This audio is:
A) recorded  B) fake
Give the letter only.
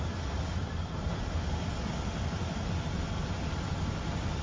A